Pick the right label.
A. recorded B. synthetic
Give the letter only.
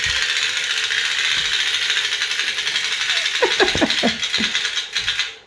A